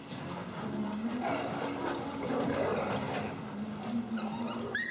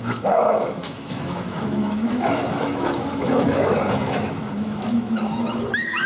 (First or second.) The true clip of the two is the first